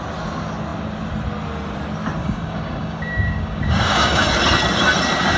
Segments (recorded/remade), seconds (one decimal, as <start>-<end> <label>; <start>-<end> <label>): 0.0-2.2 recorded; 2.2-4.3 remade; 4.3-5.4 recorded